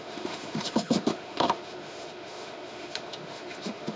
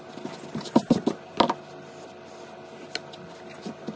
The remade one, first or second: first